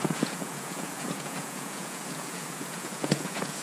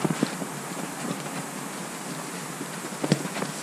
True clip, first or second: second